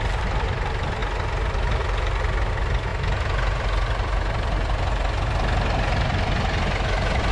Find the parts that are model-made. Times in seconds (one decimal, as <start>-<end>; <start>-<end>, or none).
none